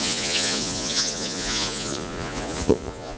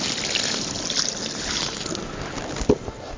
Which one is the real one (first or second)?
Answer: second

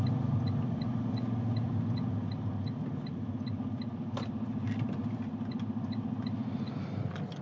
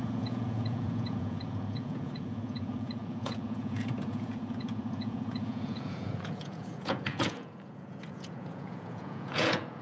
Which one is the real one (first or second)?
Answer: first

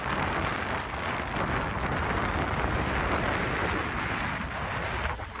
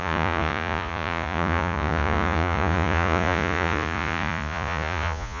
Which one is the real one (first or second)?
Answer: first